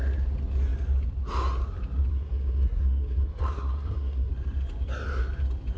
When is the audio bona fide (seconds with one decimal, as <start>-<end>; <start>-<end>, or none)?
0.0-2.1; 4.3-5.8